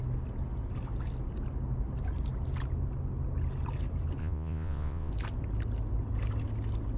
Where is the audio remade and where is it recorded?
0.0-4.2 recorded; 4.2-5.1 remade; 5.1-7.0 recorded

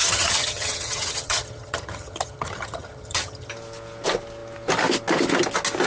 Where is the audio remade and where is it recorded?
0.0-3.5 remade; 3.5-5.9 recorded

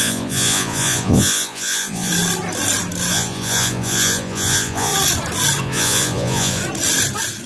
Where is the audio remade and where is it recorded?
0.0-2.1 remade; 2.1-3.1 recorded; 3.1-4.9 remade; 4.9-5.6 recorded; 5.6-6.6 remade; 6.6-7.5 recorded

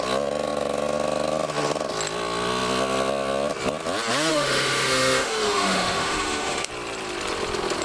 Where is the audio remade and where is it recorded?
0.0-4.3 recorded; 4.3-6.7 remade; 6.7-7.8 recorded

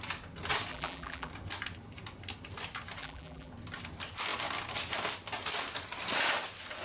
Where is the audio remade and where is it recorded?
0.0-0.7 recorded; 0.7-1.3 remade; 1.3-3.0 recorded; 3.0-3.5 remade; 3.5-6.8 recorded

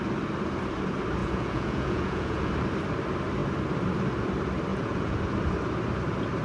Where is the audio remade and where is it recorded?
0.0-1.2 recorded; 1.2-2.5 remade; 2.5-4.7 recorded; 4.7-5.2 remade; 5.2-6.4 recorded

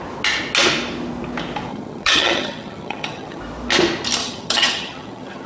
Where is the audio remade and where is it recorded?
0.0-1.7 recorded; 1.7-3.4 remade; 3.4-4.2 recorded; 4.2-5.5 remade